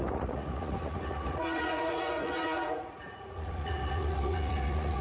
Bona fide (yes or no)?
no